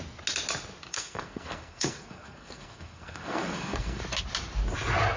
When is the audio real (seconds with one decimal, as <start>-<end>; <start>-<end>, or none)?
0.0-0.9; 4.0-5.2